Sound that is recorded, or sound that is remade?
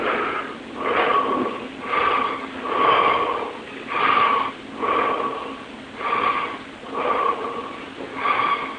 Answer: recorded